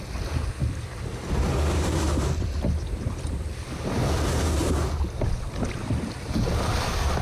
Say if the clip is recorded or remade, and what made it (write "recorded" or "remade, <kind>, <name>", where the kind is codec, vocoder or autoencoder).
recorded